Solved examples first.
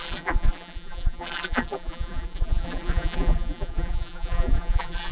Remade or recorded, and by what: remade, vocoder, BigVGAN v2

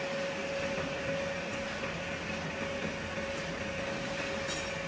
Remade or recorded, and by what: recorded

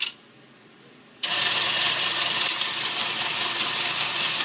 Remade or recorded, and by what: recorded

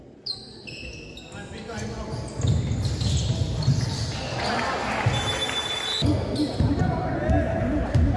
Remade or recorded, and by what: recorded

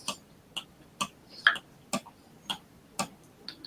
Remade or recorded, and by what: recorded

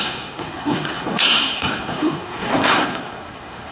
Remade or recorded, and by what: remade, codec, SNAC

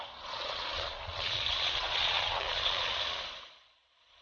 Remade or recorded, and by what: remade, vocoder, Vocos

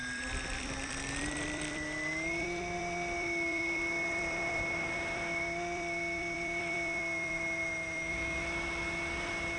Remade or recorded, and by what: remade, vocoder, BigVGAN v2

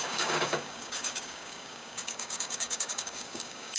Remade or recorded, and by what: remade, codec, DAC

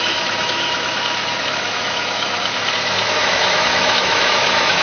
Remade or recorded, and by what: remade, autoencoder, DAC-VAE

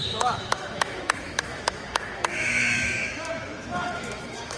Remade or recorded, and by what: remade, autoencoder, DAC-VAE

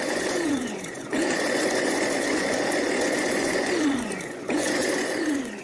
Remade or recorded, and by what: remade, vocoder, Vocos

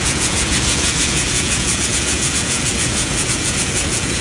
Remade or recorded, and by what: remade, vocoder, Vocos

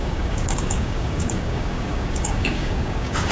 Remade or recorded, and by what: remade, codec, DAC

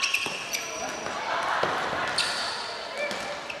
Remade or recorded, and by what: recorded